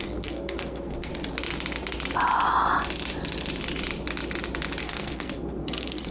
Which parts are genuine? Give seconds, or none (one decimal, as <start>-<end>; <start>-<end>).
1.1-4.8